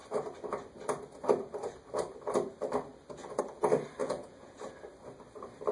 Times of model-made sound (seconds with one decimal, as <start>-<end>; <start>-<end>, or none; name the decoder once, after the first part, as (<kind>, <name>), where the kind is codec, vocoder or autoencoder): 4.0-4.6 (vocoder, Vocos)